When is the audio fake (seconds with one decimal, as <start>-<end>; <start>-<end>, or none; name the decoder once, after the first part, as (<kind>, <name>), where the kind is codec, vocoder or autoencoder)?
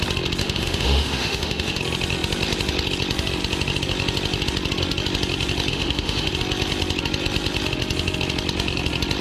0.4-1.8 (autoencoder, DAC-VAE); 5.7-6.3